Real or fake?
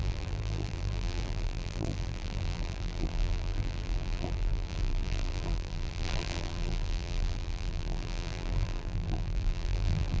fake